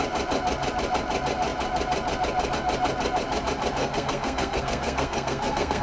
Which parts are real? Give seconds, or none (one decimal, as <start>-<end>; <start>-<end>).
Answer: 0.0-3.8